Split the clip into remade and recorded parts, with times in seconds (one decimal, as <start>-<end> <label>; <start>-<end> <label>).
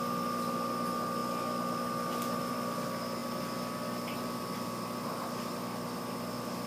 0.0-6.7 recorded